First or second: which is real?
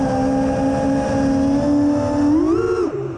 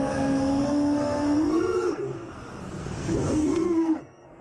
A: first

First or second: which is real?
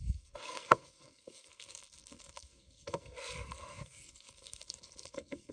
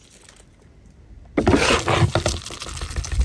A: second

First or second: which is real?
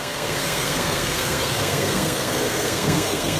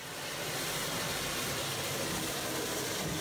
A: second